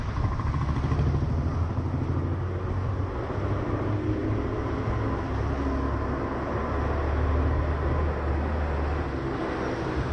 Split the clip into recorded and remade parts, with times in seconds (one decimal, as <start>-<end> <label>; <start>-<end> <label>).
0.0-10.1 recorded